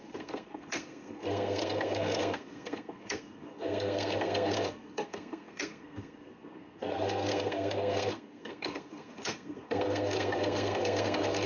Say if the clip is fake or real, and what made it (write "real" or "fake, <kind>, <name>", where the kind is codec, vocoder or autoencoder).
fake, codec, SNAC